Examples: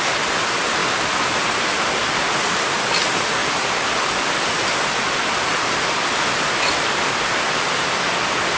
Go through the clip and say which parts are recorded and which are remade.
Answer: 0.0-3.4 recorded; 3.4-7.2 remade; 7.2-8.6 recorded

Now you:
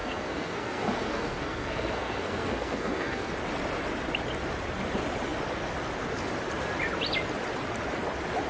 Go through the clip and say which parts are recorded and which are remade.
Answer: 0.0-3.3 remade; 3.3-8.5 recorded

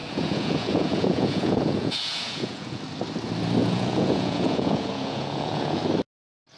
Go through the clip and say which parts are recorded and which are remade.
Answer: 0.0-2.8 remade; 2.8-3.6 recorded; 3.6-5.8 remade; 5.8-6.6 recorded

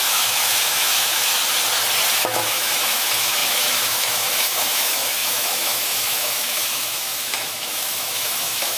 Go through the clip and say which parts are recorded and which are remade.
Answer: 0.0-1.4 remade; 1.4-2.2 recorded; 2.2-8.8 remade